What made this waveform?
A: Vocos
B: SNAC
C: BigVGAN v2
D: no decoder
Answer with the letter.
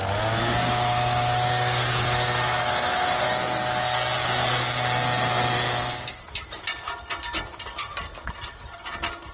D